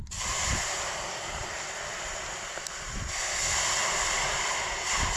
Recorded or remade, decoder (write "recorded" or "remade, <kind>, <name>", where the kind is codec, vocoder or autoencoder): recorded